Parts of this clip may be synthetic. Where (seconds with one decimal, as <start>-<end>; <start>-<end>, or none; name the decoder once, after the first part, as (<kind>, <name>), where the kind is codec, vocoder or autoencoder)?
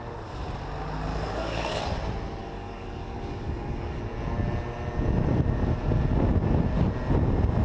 1.1-1.8 (codec, DAC); 2.4-4.0